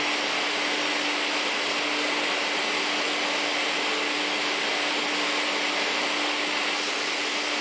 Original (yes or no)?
yes